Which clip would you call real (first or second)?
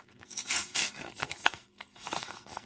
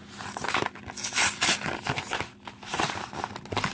second